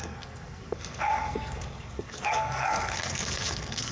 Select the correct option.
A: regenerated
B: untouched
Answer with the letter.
A